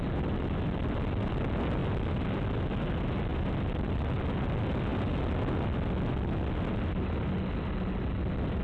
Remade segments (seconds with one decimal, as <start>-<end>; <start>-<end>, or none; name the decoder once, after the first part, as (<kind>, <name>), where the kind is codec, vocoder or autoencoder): none